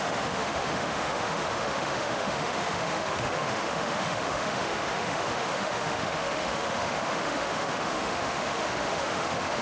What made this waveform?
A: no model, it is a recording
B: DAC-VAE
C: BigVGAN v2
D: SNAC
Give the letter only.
B